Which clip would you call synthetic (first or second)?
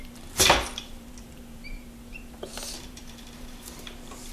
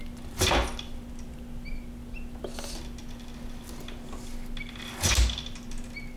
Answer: first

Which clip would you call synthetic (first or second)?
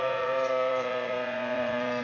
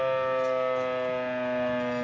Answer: first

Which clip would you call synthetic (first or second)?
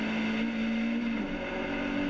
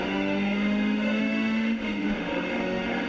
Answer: second